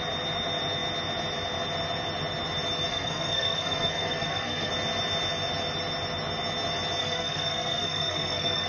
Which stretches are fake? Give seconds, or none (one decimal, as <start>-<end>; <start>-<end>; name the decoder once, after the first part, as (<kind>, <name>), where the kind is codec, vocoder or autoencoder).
2.9-4.7 (codec, SNAC); 7.0-8.7